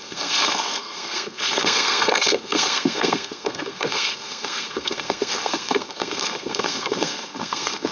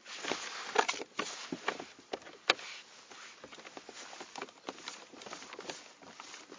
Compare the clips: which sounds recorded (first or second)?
second